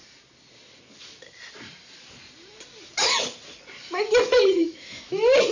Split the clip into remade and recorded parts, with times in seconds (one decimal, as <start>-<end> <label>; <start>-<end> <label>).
0.0-4.6 recorded; 4.6-5.1 remade; 5.1-5.5 recorded